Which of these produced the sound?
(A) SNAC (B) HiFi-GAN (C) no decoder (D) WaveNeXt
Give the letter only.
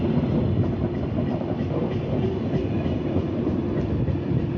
C